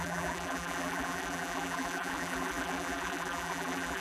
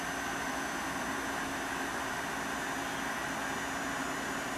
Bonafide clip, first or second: second